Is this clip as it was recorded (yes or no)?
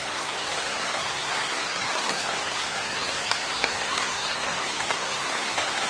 no